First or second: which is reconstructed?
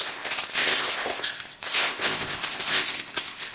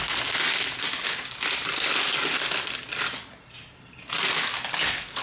first